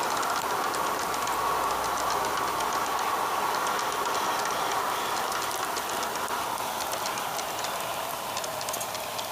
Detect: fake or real real